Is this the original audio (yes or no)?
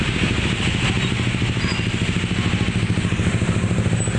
yes